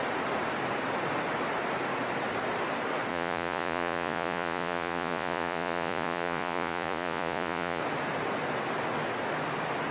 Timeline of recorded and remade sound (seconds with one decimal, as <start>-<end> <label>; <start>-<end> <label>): 0.0-3.1 recorded; 3.1-7.8 remade; 7.8-9.9 recorded